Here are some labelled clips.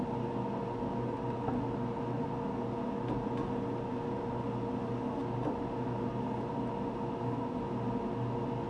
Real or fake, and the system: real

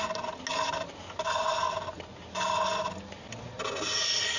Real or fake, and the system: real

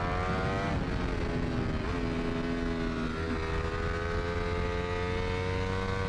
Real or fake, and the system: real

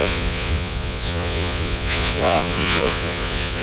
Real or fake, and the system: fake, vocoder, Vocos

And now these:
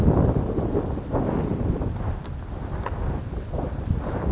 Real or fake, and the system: real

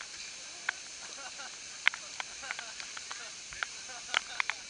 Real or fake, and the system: real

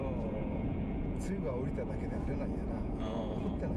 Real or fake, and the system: fake, vocoder, Vocos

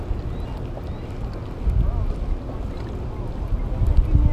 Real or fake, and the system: real